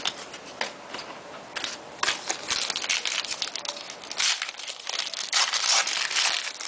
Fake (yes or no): no